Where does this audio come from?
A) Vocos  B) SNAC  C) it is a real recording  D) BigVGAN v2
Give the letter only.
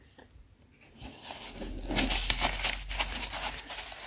C